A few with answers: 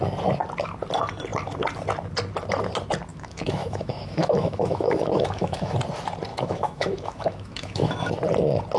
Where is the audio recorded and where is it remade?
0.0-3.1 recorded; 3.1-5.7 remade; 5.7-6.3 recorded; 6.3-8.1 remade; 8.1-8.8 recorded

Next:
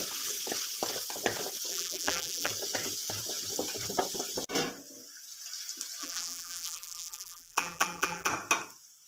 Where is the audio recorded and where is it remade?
0.0-1.7 recorded; 1.7-2.5 remade; 2.5-6.0 recorded; 6.0-8.3 remade; 8.3-9.1 recorded

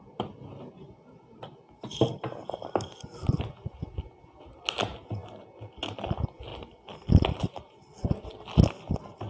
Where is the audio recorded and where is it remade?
0.0-9.3 recorded

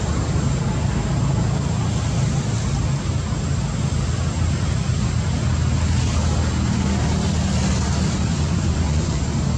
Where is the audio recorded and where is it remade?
0.0-8.3 recorded; 8.3-9.2 remade; 9.2-9.6 recorded

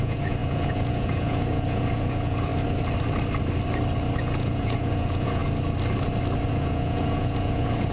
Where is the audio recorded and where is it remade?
0.0-2.5 remade; 2.5-4.2 recorded; 4.2-5.4 remade; 5.4-6.5 recorded; 6.5-7.9 remade

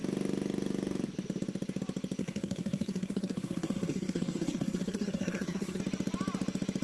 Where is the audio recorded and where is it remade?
0.0-2.2 recorded; 2.2-5.8 remade; 5.8-6.8 recorded